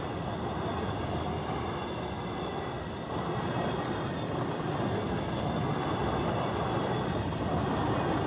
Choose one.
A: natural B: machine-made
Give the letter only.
A